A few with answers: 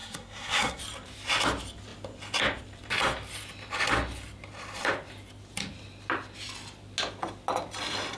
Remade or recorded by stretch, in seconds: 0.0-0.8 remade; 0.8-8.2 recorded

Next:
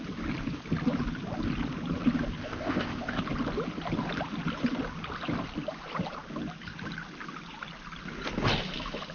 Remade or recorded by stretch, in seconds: 0.0-2.4 recorded; 2.4-3.2 remade; 3.2-9.1 recorded